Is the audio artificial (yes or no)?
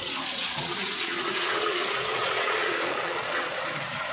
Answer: yes